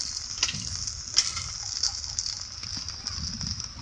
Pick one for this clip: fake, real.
real